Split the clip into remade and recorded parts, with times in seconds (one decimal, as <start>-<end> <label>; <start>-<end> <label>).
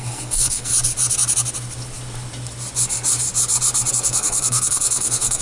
0.0-0.7 remade; 0.7-3.9 recorded; 3.9-5.4 remade